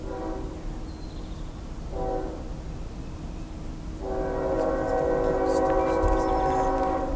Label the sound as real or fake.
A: real